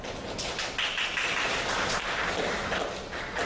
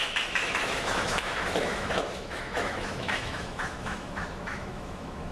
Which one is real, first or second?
first